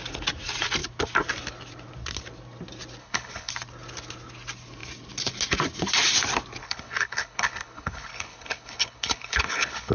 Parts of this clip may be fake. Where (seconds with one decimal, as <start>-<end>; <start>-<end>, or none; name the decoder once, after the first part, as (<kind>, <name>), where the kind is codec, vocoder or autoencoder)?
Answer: 3.0-3.5 (codec, HILCodec); 6.6-9.9